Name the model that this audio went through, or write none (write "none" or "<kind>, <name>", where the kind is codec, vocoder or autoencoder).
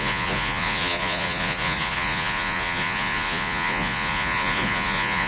vocoder, Vocos